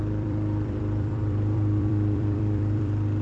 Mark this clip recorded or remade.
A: remade